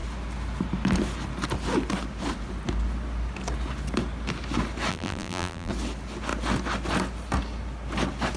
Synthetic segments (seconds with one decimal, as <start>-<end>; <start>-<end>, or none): 4.9-5.7